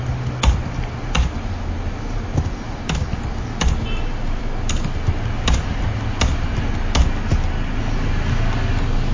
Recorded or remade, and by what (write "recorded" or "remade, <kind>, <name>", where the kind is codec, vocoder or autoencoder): recorded